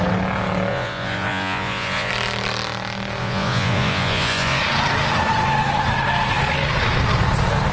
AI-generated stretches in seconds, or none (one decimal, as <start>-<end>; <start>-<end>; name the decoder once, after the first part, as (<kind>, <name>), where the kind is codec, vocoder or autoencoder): 0.7-2.1 (vocoder, Vocos); 3.2-4.6